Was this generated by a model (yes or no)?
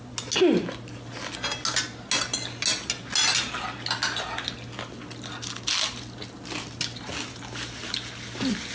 no